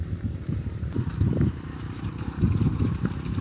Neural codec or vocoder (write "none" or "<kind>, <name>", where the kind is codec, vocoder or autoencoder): vocoder, BigVGAN v2